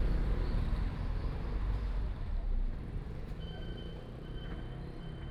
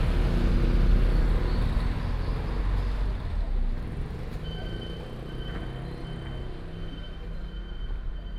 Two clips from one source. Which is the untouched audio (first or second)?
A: second